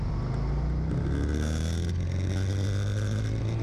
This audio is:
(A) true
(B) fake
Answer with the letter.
A